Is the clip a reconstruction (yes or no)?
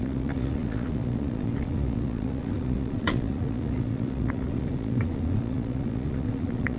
yes